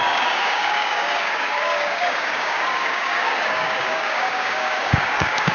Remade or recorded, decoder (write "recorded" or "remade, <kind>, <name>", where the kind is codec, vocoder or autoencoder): remade, codec, DAC